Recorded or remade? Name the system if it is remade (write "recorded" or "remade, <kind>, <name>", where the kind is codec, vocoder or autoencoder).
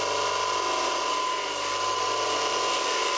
recorded